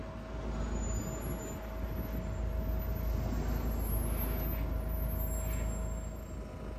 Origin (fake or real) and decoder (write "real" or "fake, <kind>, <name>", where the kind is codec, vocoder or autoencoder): real